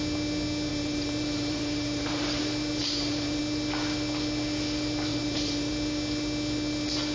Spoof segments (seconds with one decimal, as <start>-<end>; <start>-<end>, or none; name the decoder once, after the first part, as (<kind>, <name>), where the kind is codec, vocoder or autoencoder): 0.7-2.4 (vocoder, BigVGAN v2); 2.8-3.4; 5.1-5.7